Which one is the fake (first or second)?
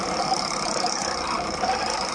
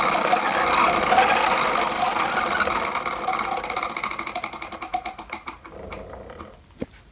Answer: first